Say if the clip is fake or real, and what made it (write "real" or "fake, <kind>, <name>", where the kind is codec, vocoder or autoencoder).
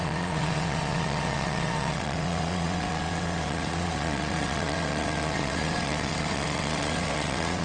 fake, vocoder, WaveNeXt